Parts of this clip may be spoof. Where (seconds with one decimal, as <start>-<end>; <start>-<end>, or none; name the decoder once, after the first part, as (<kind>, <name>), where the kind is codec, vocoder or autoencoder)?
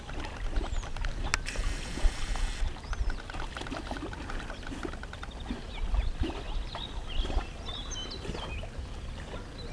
none